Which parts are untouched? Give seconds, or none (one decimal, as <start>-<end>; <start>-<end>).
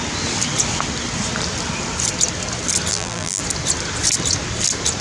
0.0-2.9; 3.4-5.0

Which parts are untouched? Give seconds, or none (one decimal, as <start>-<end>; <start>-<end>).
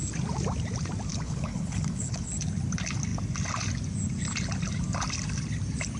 0.0-1.1; 2.3-6.0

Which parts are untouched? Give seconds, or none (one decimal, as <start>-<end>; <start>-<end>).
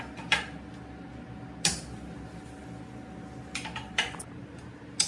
0.0-5.1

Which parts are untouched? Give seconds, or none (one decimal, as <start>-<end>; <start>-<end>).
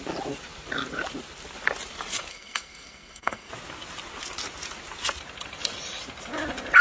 0.0-2.3; 3.5-6.8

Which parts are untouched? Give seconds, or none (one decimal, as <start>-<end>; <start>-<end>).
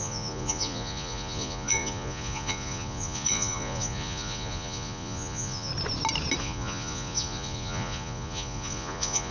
5.7-6.4